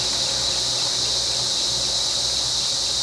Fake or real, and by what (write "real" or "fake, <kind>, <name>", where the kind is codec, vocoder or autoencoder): real